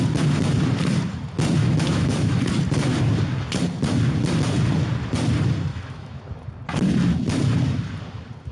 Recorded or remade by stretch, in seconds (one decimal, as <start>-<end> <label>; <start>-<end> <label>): 0.0-1.6 recorded; 1.6-2.4 remade; 2.4-5.7 recorded; 5.7-6.2 remade; 6.2-8.5 recorded